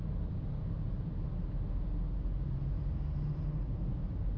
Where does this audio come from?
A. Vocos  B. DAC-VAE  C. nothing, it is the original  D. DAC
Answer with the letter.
C